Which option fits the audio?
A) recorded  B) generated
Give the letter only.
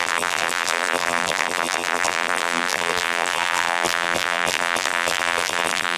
B